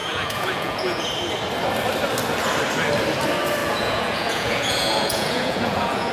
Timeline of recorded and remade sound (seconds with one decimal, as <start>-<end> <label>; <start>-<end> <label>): 0.0-1.1 remade; 1.1-3.6 recorded; 3.6-6.1 remade